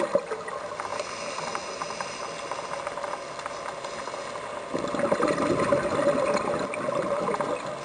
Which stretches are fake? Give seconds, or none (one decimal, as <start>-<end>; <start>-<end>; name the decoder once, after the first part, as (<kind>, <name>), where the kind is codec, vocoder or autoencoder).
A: none